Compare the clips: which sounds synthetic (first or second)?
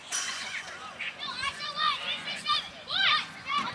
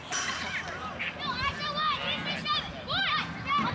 first